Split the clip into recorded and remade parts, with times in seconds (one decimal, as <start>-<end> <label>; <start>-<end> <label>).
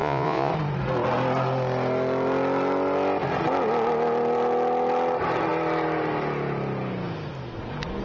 0.0-0.5 remade; 0.5-8.0 recorded